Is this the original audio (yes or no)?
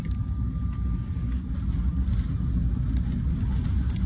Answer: yes